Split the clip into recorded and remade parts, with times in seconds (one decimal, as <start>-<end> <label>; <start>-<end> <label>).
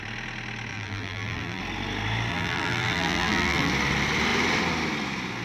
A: 0.0-0.7 recorded; 0.7-1.6 remade; 1.6-2.3 recorded; 2.3-3.7 remade; 3.7-5.4 recorded